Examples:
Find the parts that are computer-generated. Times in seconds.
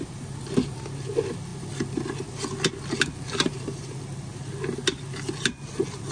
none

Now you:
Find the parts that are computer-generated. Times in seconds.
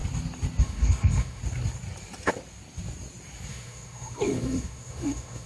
0.6-1.4 (autoencoder, DAC-VAE); 3.5-5.5